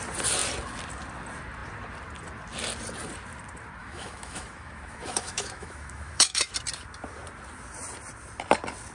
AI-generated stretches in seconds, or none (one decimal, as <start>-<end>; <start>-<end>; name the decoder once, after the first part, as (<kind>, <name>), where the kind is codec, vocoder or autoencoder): 3.8-6.5 (autoencoder, DAC-VAE)